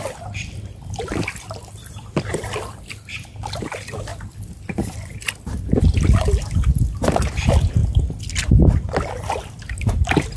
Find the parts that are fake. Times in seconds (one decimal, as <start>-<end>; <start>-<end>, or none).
0.0-7.8; 9.8-10.4